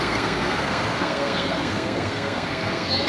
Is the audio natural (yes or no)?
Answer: no